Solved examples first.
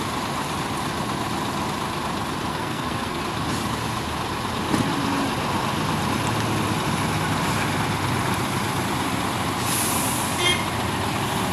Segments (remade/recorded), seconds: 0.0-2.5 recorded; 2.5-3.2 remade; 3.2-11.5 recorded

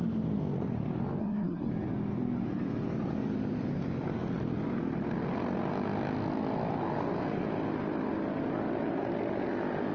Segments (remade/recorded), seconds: 0.0-1.2 recorded; 1.2-1.7 remade; 1.7-9.9 recorded